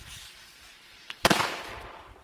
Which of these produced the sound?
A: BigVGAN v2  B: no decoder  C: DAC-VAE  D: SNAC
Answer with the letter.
B